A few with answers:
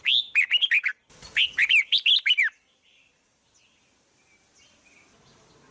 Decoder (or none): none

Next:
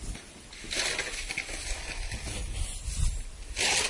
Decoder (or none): none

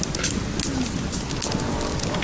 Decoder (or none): none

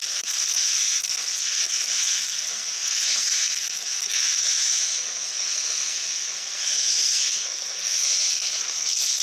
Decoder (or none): codec, SNAC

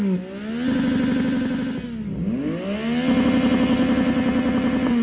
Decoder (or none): none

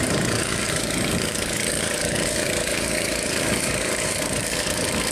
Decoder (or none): codec, DAC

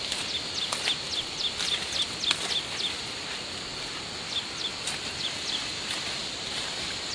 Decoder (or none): none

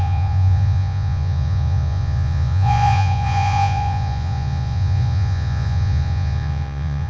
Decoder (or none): vocoder, Vocos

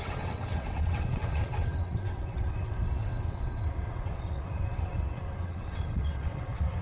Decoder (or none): vocoder, WaveNeXt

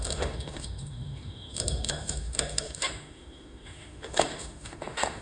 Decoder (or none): autoencoder, DAC-VAE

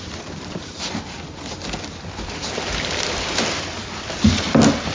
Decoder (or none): vocoder, BigVGAN v2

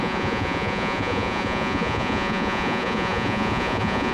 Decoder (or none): vocoder, Vocos